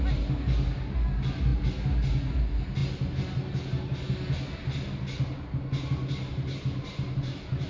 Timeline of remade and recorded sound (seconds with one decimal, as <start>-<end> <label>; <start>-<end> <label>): 0.0-7.7 recorded